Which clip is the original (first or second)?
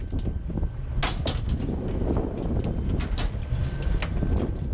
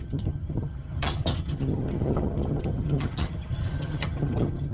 first